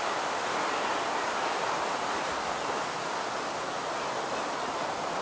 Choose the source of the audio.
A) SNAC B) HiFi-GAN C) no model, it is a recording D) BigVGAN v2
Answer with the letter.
C